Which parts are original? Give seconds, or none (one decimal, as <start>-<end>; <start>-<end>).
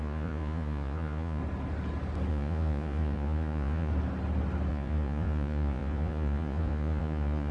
1.4-2.3; 3.9-4.7